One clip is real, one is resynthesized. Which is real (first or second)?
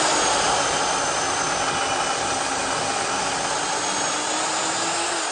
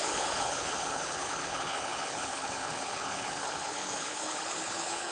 first